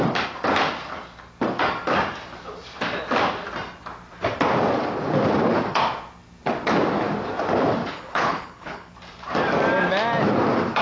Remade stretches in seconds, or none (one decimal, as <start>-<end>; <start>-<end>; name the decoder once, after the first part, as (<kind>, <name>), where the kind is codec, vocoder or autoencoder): 7.8-8.9 (codec, HILCodec)